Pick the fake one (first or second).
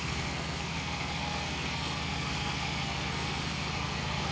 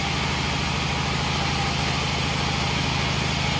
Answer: first